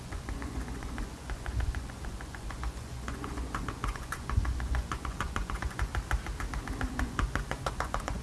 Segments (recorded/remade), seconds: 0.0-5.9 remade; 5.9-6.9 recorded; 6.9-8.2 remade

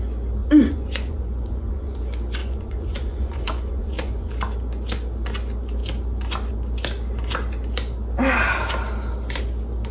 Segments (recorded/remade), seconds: 0.0-0.4 recorded; 0.4-2.0 remade; 2.0-2.4 recorded; 2.4-4.3 remade; 4.3-9.9 recorded

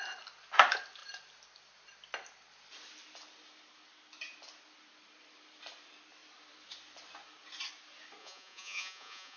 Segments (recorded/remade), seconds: 0.0-8.2 recorded; 8.2-9.4 remade

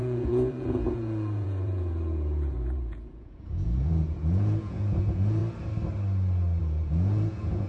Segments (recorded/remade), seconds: 0.0-5.4 remade; 5.4-6.6 recorded; 6.6-7.7 remade

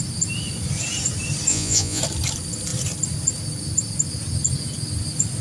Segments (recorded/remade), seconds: 0.0-1.5 recorded; 1.5-2.0 remade; 2.0-5.4 recorded

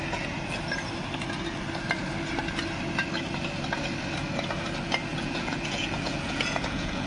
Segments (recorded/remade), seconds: 0.0-5.1 recorded; 5.1-7.1 remade

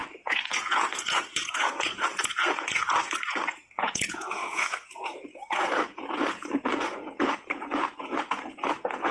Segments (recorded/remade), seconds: 0.0-9.1 remade